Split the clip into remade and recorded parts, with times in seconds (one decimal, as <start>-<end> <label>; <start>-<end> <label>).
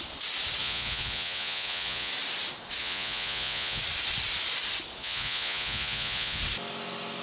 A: 0.0-0.6 recorded; 0.6-2.1 remade; 2.1-2.8 recorded; 2.8-3.8 remade; 3.8-5.0 recorded; 5.0-6.4 remade; 6.4-7.2 recorded